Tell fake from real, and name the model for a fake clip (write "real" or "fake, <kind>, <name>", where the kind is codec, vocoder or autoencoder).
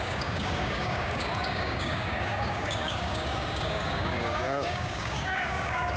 fake, codec, DAC